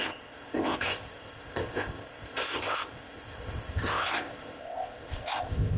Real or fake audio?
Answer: fake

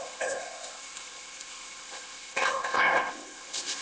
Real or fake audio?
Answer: fake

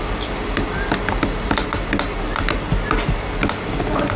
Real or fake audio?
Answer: real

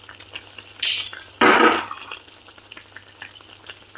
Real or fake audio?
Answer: real